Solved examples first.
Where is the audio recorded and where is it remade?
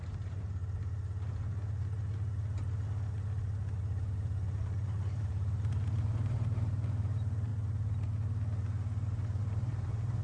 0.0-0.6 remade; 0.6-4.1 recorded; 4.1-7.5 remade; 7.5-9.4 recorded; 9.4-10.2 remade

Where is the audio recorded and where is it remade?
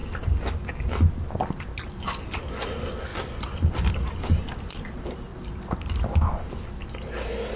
0.0-5.3 recorded; 5.3-6.0 remade; 6.0-7.6 recorded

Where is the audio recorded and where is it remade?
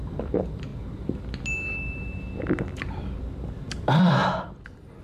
0.0-0.7 remade; 0.7-3.7 recorded; 3.7-4.2 remade; 4.2-5.0 recorded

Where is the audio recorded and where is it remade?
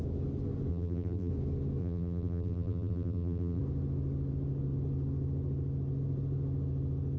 0.0-0.7 recorded; 0.7-1.3 remade; 1.3-1.8 recorded; 1.8-3.6 remade; 3.6-7.2 recorded